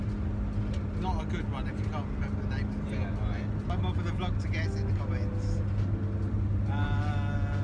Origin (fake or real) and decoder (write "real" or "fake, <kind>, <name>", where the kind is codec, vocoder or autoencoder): real